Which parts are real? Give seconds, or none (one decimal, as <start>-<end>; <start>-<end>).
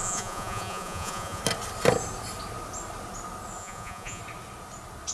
1.4-3.6; 4.2-5.1